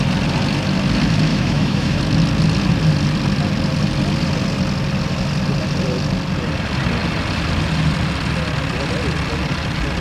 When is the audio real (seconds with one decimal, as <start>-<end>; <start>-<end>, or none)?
0.0-1.3; 2.0-10.0